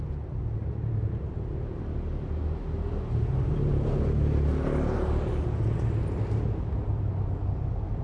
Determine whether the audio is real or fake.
real